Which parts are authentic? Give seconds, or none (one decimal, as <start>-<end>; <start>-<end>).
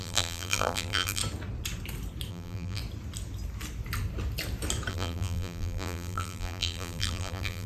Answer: 1.2-2.3; 2.8-4.9